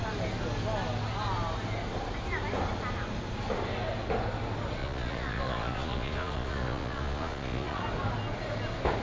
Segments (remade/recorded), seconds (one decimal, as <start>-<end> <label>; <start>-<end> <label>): 0.0-4.8 recorded; 4.8-7.8 remade; 7.8-9.0 recorded